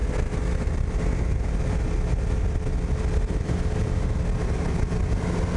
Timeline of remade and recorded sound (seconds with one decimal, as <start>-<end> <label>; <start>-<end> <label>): 0.0-5.6 recorded